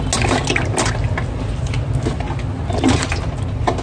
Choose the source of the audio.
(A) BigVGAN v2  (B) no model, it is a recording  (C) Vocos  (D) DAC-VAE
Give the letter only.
B